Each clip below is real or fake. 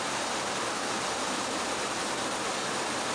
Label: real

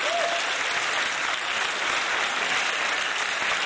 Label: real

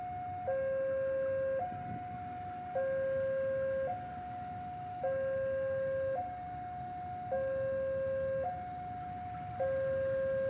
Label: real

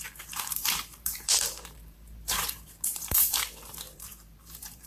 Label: fake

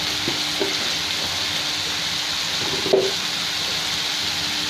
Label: real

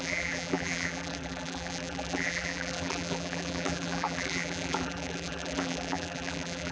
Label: fake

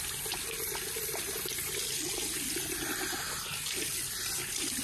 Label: real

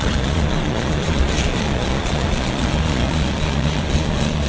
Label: fake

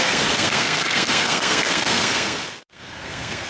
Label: fake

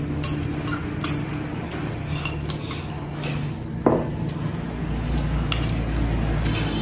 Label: real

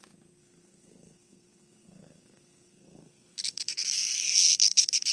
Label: fake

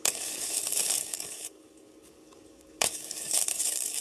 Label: fake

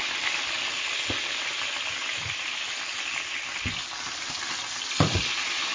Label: real